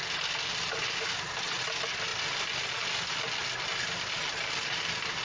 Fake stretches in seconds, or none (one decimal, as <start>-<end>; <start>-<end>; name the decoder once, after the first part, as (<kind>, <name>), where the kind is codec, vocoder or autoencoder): none